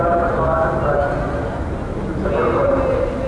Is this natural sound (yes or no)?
yes